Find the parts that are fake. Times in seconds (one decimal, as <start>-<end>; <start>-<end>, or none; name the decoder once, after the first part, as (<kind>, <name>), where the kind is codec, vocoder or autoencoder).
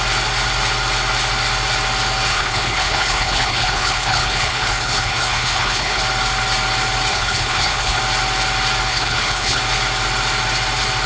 2.3-6.0 (codec, HILCodec); 7.1-8.0; 8.9-9.6